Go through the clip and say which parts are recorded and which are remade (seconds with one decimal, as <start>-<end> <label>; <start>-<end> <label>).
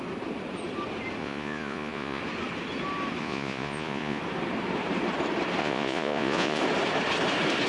0.0-1.2 recorded; 1.2-2.2 remade; 2.2-3.2 recorded; 3.2-4.2 remade; 4.2-5.6 recorded; 5.6-6.6 remade; 6.6-7.7 recorded